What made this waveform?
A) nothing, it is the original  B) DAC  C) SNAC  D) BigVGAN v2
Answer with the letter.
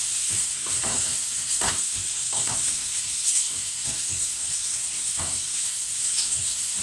C